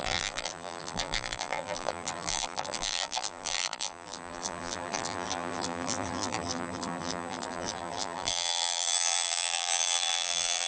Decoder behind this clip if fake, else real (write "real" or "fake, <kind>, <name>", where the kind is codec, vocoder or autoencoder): fake, vocoder, BigVGAN v2